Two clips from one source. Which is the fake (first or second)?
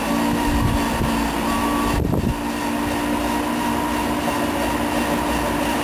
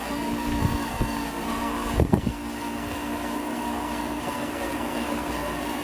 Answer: second